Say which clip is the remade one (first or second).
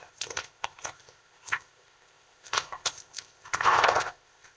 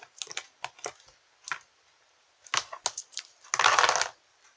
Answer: first